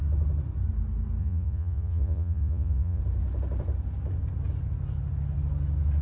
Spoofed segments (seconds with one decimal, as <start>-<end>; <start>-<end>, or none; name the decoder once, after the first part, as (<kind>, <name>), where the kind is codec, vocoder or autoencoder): 1.2-3.0 (vocoder, Vocos)